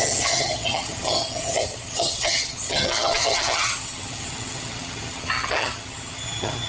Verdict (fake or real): fake